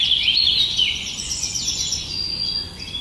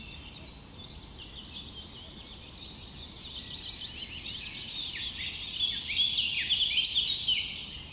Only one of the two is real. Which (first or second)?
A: second